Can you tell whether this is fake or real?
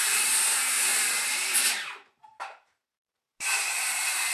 fake